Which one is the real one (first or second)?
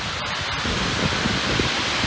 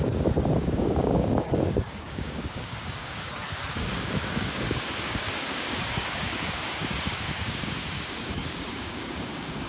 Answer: first